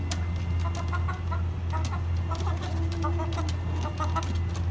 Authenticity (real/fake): real